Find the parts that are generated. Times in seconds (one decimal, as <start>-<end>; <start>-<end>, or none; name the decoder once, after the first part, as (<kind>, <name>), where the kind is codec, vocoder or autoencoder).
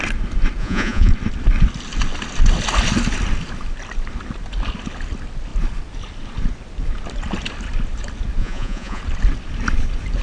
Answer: 0.6-1.1 (vocoder, Vocos); 8.4-9.0